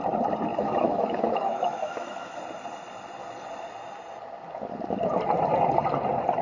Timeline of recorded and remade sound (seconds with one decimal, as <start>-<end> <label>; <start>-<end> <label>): 0.0-0.5 recorded; 0.5-2.4 remade; 2.4-6.4 recorded